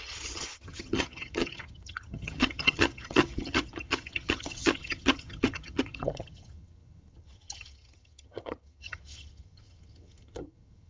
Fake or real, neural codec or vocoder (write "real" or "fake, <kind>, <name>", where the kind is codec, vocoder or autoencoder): fake, vocoder, HiFi-GAN